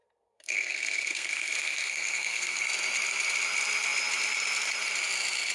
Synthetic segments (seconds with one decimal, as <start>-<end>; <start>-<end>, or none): 0.0-2.6